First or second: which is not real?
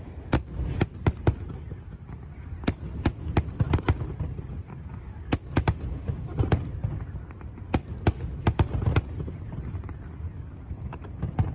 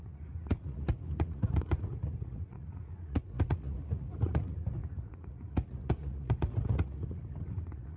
second